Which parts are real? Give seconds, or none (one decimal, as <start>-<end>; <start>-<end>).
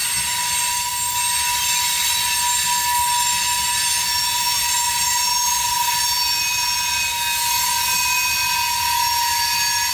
0.0-9.9